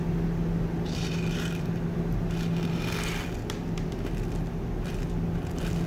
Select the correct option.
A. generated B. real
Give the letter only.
B